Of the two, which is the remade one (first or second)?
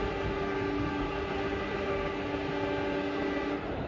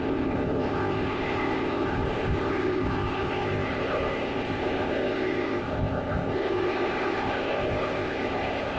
second